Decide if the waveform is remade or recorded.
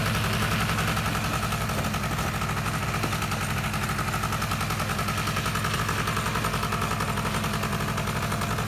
recorded